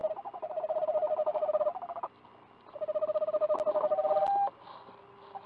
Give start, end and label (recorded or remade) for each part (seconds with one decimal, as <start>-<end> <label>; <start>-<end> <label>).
0.0-5.5 recorded